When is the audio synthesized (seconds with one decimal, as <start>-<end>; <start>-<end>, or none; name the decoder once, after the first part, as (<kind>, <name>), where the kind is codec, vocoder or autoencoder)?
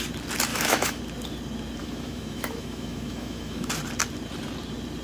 0.5-1.0 (autoencoder, DAC-VAE); 1.8-3.7